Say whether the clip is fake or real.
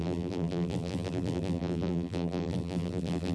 fake